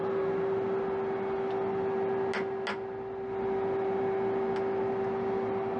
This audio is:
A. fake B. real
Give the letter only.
B